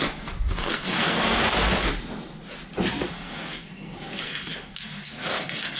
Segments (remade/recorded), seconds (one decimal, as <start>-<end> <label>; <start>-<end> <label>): 0.0-1.4 remade; 1.4-2.9 recorded; 2.9-5.8 remade